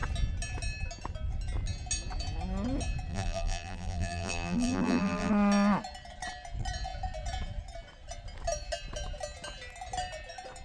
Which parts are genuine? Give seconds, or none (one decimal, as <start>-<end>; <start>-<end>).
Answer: 0.0-3.1; 5.3-10.6